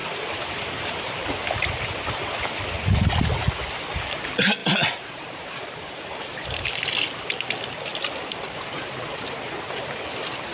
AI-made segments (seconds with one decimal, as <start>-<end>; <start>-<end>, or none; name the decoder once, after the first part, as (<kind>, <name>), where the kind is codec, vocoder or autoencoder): 0.0-1.1 (vocoder, BigVGAN v2); 4.6-6.9